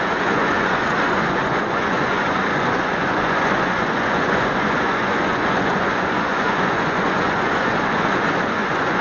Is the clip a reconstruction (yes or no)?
yes